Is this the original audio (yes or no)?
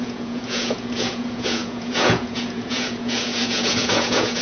no